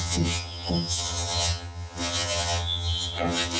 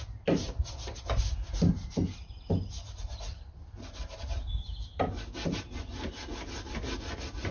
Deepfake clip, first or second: first